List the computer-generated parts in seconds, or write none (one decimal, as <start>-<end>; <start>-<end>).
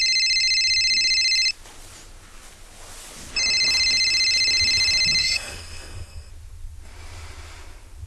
5.2-6.3